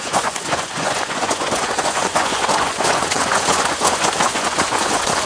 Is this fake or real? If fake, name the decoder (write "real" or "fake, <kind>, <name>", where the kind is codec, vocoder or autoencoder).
fake, vocoder, Vocos